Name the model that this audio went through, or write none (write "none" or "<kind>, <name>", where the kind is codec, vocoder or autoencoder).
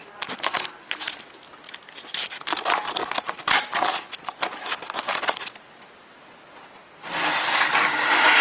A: none